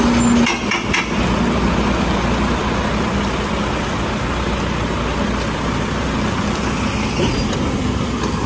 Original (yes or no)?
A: yes